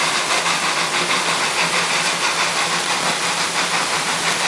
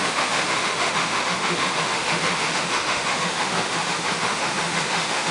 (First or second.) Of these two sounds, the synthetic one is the second